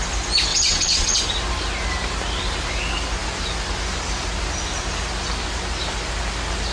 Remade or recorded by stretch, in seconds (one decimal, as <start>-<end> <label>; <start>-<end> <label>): 0.0-0.5 recorded; 0.5-1.2 remade; 1.2-6.7 recorded